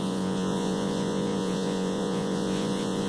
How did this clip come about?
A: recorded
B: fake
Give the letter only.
B